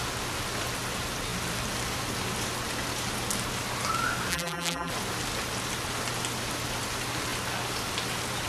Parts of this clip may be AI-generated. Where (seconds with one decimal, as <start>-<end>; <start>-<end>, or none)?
4.3-4.9